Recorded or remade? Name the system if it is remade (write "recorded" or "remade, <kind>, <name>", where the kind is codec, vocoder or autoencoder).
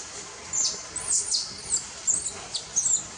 recorded